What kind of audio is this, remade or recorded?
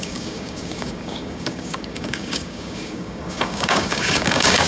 remade